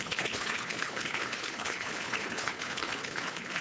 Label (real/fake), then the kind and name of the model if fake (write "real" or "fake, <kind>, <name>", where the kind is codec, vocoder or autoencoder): fake, codec, HILCodec